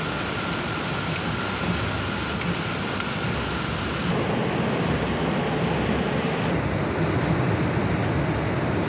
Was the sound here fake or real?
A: real